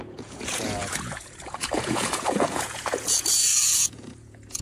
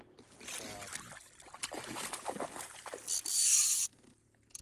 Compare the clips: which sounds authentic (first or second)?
second